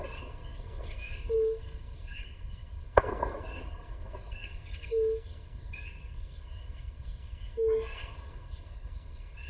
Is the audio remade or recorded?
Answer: remade